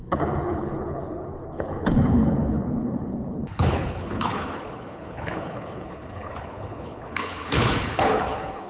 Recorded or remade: remade